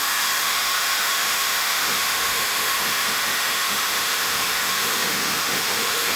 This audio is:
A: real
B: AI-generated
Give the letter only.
B